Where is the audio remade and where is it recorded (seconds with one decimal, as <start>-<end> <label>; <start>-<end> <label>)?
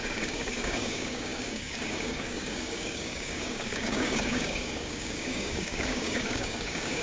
0.0-7.0 remade